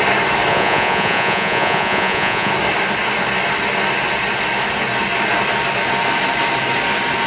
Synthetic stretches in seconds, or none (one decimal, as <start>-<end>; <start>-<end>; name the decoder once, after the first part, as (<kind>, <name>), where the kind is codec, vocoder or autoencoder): 0.5-2.5 (vocoder, Vocos)